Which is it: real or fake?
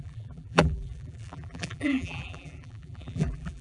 fake